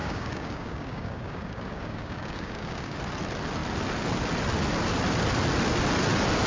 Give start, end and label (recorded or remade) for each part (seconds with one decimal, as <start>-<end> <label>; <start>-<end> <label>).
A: 0.0-3.0 remade; 3.0-6.5 recorded